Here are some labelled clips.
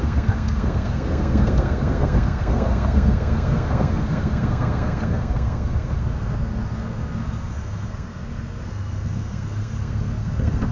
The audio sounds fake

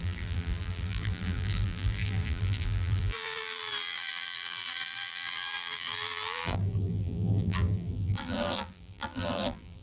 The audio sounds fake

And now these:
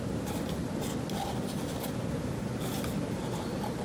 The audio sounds real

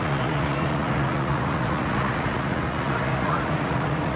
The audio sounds fake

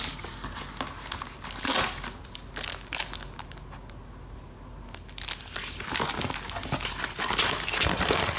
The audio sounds real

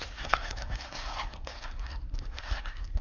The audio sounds fake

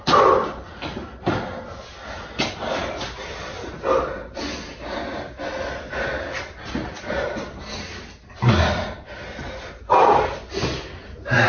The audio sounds real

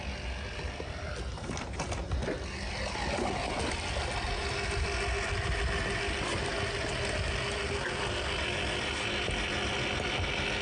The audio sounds real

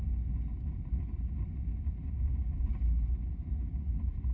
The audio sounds real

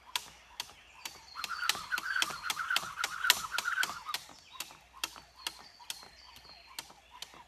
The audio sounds real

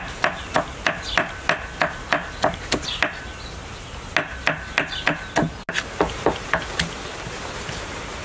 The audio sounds real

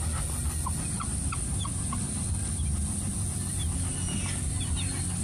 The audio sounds real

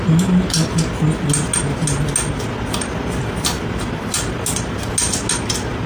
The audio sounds real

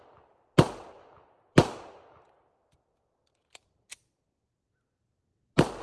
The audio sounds real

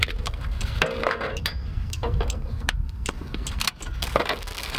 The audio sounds fake